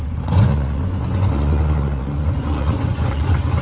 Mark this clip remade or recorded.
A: remade